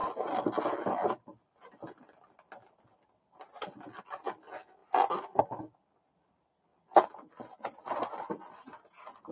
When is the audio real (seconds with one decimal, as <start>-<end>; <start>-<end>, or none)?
0.0-9.3